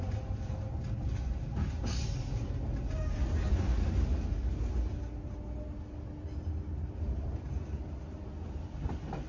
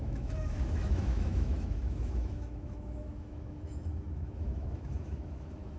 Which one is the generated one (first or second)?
second